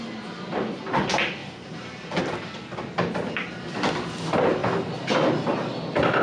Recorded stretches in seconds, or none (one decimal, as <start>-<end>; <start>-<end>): 0.0-1.4; 2.2-6.2